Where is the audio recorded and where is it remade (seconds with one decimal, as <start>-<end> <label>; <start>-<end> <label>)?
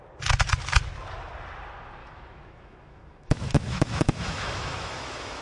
0.0-2.0 recorded; 2.0-5.4 remade